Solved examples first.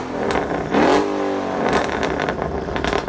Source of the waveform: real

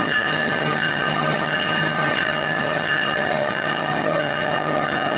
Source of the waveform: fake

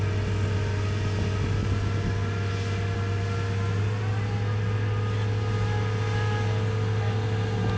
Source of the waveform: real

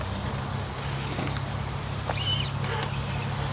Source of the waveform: real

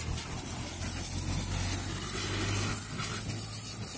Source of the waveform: real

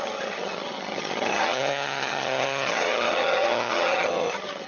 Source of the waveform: fake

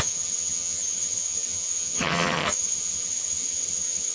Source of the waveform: fake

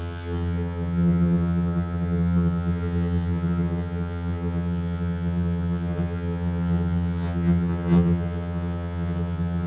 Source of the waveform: fake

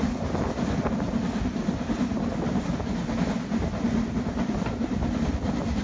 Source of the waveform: real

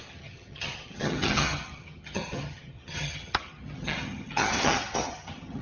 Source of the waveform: fake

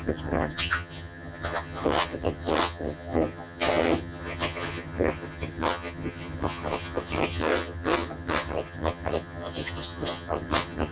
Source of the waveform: fake